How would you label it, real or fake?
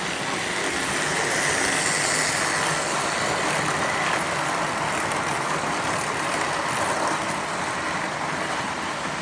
real